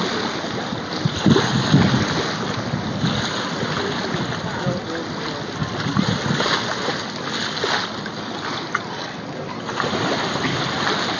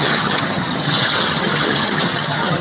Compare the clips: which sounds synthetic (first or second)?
second